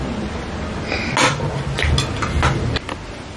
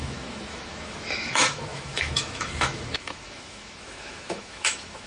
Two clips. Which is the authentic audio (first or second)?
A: first